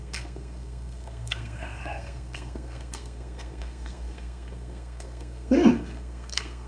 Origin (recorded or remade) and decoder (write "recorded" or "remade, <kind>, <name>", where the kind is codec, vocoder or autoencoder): remade, codec, SNAC